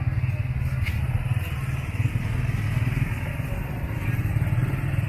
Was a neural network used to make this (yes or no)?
no